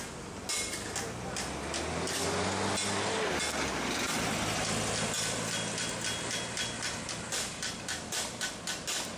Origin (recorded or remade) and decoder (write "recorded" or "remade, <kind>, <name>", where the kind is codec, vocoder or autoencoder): recorded